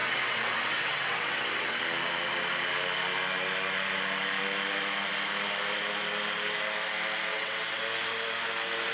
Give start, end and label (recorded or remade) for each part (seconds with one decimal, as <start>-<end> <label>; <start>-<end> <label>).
0.0-1.8 remade; 1.8-7.3 recorded; 7.3-7.8 remade; 7.8-8.9 recorded